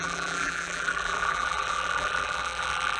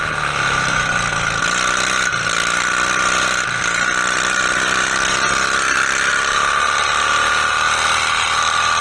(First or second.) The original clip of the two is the second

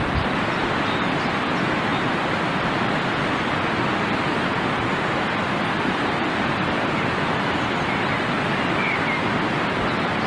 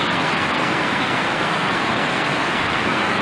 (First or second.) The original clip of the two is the first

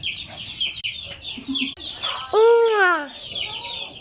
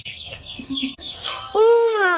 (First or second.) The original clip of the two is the first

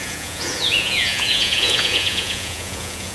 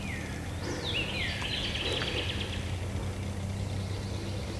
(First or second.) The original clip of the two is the second